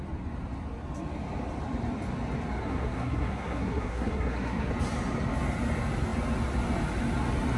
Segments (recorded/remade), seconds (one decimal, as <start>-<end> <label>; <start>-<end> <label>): 0.0-2.6 recorded; 2.6-4.7 remade; 4.7-7.6 recorded